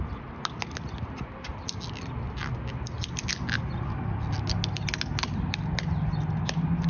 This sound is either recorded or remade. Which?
recorded